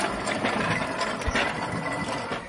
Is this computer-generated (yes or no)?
no